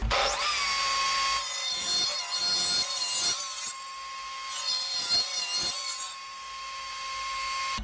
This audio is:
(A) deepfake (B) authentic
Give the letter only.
B